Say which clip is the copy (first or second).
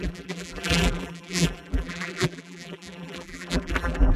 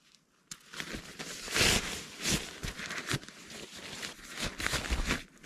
first